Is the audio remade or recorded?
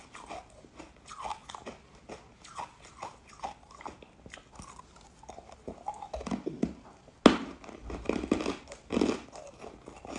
recorded